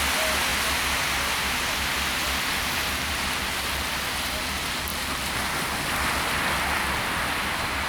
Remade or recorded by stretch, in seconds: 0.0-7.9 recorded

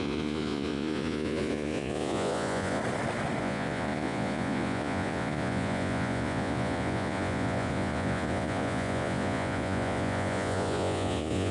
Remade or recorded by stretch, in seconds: 0.0-2.8 remade; 2.8-3.4 recorded; 3.4-11.5 remade